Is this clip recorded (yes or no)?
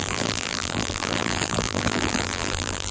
no